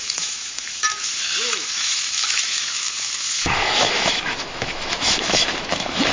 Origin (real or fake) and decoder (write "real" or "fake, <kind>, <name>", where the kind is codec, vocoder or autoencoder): fake, autoencoder, DAC-VAE